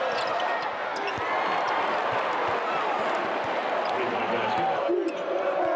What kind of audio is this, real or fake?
real